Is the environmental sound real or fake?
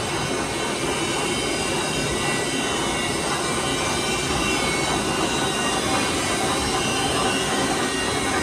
real